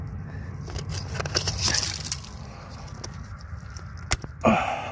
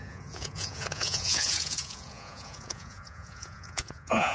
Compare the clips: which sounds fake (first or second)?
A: second